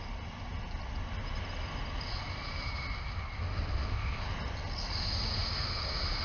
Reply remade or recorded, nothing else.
recorded